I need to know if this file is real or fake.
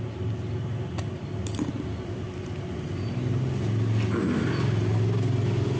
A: real